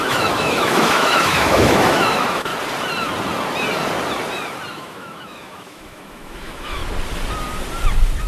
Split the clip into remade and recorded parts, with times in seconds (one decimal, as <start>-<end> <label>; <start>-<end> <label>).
0.0-2.5 remade; 2.5-4.7 recorded; 4.7-6.8 remade; 6.8-8.3 recorded